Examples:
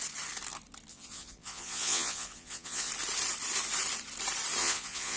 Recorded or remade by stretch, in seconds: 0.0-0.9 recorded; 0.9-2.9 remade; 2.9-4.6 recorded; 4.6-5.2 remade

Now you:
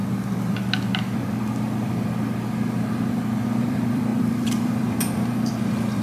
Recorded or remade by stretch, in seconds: 0.0-3.6 recorded; 3.6-6.0 remade

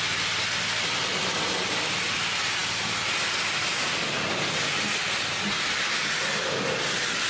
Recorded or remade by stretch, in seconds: 0.0-7.3 recorded